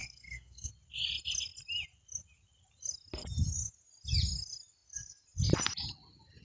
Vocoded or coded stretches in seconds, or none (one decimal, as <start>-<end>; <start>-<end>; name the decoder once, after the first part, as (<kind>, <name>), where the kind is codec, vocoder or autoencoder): 0.0-0.7 (codec, SNAC)